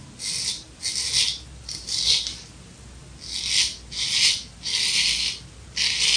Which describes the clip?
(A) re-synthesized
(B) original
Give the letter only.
B